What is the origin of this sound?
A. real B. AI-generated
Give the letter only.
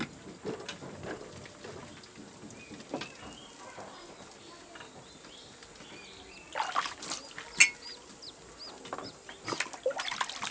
A